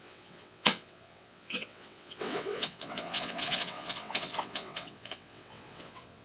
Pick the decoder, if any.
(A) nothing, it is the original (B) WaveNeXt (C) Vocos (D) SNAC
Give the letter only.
B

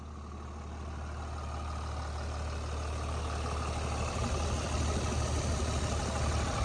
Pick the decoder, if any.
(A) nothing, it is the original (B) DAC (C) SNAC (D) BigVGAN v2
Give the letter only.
A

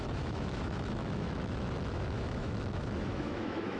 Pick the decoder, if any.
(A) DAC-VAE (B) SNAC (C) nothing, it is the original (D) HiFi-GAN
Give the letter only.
A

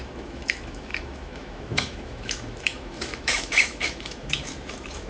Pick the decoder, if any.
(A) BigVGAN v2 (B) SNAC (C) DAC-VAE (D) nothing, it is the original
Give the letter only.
C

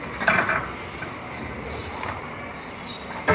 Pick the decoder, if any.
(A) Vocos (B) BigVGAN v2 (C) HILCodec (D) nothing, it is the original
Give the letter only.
D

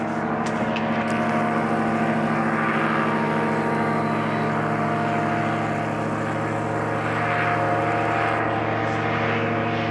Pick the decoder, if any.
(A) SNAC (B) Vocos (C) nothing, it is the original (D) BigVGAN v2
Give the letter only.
C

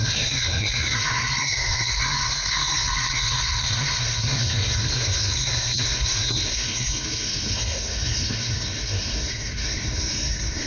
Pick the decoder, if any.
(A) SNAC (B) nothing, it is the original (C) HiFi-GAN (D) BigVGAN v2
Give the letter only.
A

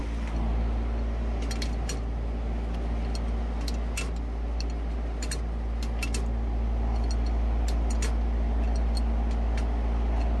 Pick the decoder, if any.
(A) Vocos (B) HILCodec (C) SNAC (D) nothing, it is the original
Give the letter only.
D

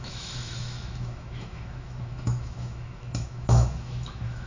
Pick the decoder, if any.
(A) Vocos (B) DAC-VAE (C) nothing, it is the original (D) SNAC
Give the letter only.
B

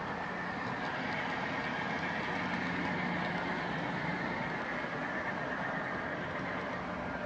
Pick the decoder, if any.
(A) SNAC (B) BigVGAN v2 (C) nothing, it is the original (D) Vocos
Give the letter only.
C